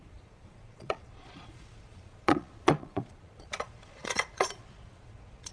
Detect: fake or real fake